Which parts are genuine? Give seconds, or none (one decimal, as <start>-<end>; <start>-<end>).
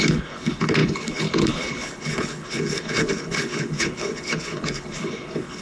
none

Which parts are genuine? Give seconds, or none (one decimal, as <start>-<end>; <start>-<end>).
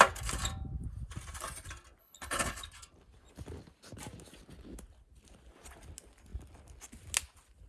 0.0-2.0; 2.6-7.7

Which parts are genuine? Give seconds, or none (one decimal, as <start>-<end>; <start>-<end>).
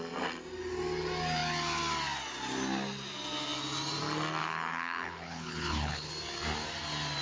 0.0-4.4; 6.1-7.2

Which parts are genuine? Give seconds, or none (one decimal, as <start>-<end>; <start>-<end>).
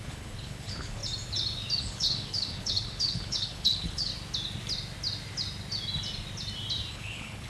1.0-1.8; 4.1-6.9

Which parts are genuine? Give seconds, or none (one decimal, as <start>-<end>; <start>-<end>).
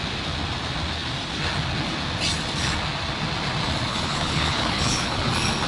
0.0-3.9; 5.3-5.7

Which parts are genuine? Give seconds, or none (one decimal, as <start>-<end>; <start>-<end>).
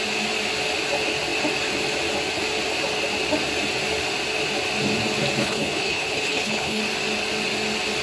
0.0-5.4; 6.8-8.0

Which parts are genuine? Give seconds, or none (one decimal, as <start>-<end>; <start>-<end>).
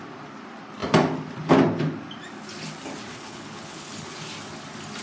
0.0-3.1; 4.3-5.0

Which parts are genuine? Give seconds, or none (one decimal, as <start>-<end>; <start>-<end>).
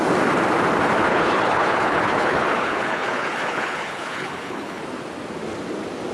0.0-1.1; 4.8-6.1